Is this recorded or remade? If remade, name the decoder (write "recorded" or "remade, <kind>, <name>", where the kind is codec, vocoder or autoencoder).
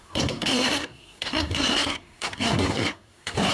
remade, codec, SNAC